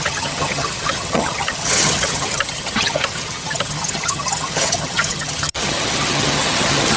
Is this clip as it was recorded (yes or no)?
no